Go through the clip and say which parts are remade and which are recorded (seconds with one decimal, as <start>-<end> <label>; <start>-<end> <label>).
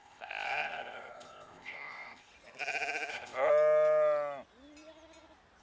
0.0-2.3 remade; 2.3-3.1 recorded; 3.1-3.5 remade; 3.5-5.6 recorded